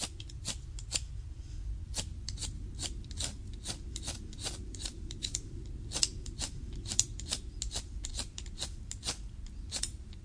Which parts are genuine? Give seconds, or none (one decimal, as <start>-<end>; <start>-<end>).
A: 0.0-10.2